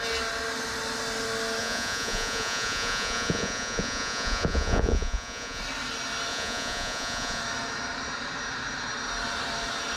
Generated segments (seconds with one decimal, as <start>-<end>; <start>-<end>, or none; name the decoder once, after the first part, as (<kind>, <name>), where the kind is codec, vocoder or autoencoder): 1.6-5.6 (vocoder, Vocos); 6.3-7.4